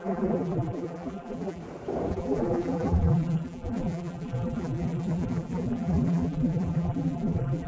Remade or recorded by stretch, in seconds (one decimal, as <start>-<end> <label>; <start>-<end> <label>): 0.0-1.6 remade; 1.6-2.1 recorded; 2.1-7.7 remade